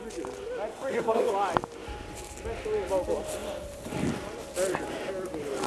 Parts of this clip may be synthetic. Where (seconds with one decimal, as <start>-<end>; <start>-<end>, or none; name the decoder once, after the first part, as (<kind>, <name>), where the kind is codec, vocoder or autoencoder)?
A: 0.7-1.3 (codec, SNAC)

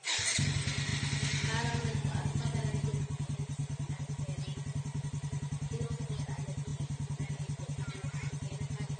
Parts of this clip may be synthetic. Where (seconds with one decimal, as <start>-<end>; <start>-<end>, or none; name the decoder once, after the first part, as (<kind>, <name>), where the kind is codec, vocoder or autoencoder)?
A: none

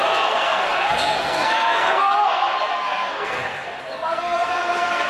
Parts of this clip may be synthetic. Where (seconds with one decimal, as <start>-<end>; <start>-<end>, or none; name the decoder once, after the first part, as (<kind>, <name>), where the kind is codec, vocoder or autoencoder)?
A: 0.0-5.1 (codec, SNAC)

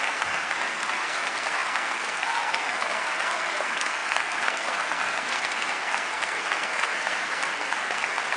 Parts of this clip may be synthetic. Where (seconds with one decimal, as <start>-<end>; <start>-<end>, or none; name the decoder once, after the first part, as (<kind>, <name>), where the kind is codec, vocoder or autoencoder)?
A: 0.0-8.4 (codec, SNAC)

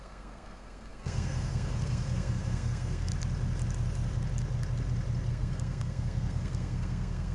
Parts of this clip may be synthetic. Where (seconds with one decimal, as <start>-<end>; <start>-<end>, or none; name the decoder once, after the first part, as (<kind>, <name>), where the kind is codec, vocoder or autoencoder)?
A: 0.0-3.1 (codec, SNAC); 5.3-7.3

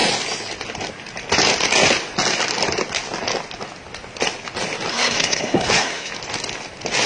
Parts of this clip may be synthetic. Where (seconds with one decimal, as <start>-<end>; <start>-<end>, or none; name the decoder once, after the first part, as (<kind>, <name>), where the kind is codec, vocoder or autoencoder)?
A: 4.9-6.1 (codec, SNAC)